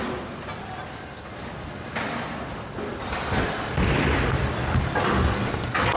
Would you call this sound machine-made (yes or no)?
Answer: no